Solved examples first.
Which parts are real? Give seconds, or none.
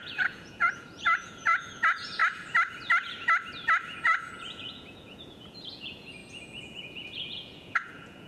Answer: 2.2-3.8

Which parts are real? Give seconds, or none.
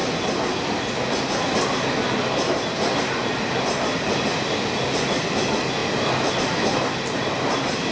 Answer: 0.0-7.9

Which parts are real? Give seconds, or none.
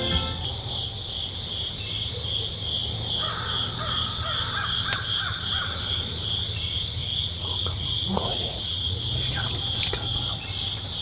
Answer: 0.0-7.0; 9.0-11.0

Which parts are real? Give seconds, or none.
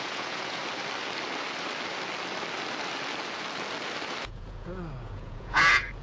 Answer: 0.6-4.2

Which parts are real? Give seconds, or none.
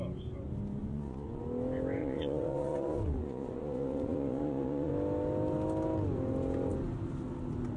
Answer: 0.0-0.8; 1.4-2.0; 4.9-7.8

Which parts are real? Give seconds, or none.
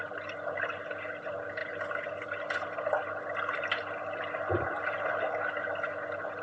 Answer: 0.0-6.4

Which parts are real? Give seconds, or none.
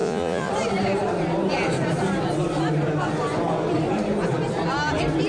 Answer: 0.5-5.3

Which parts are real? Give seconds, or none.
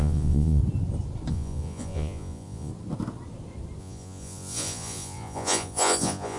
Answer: 0.6-1.3; 2.7-3.8